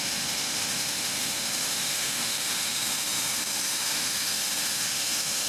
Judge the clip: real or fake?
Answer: fake